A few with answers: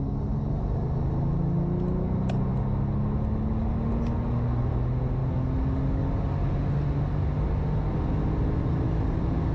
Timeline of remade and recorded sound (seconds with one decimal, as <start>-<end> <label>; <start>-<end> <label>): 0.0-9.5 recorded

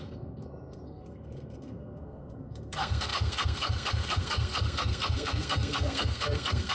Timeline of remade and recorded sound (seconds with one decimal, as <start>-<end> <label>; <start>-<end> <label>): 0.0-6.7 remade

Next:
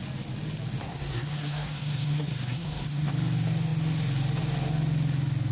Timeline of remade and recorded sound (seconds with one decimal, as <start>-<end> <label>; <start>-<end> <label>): 0.0-0.8 recorded; 0.8-3.1 remade; 3.1-5.5 recorded

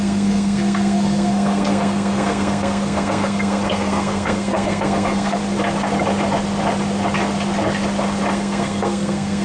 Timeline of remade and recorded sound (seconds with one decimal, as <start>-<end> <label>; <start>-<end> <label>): 0.0-5.4 remade; 5.4-8.3 recorded; 8.3-9.4 remade

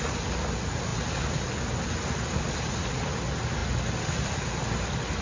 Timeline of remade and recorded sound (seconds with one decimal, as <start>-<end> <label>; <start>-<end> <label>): 0.0-5.2 recorded